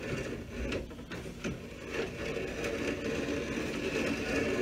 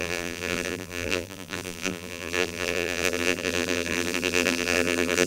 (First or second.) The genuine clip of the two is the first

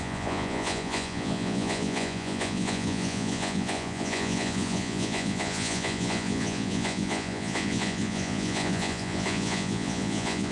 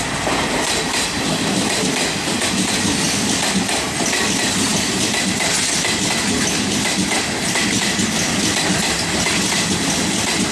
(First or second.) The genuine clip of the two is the second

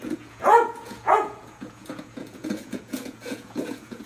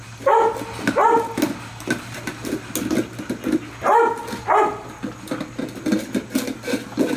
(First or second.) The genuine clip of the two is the second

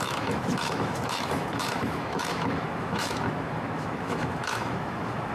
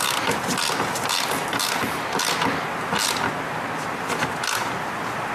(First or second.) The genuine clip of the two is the second